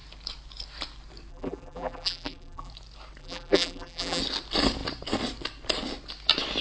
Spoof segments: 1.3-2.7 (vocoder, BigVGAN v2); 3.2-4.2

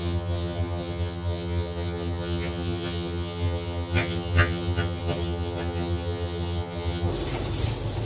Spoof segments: 0.0-7.1 (vocoder, HiFi-GAN)

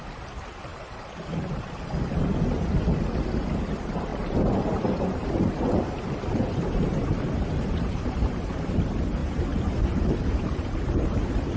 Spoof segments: 0.7-1.7 (vocoder, BigVGAN v2); 4.1-8.7; 9.2-11.6

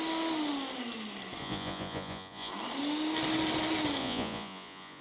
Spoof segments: 1.4-2.5 (vocoder, Vocos); 4.0-5.0

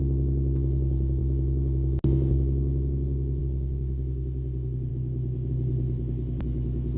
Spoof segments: 1.2-3.4 (autoencoder, DAC-VAE); 4.9-5.5

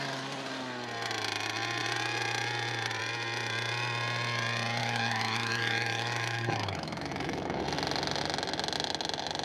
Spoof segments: 4.8-7.6 (autoencoder, DAC-VAE)

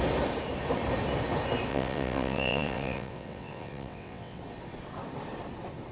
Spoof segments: 1.7-4.4 (vocoder, WaveNeXt)

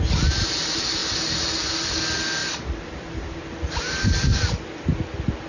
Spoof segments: 2.4-3.4 (vocoder, BigVGAN v2)